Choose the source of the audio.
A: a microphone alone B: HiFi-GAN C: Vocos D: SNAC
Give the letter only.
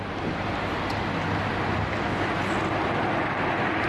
A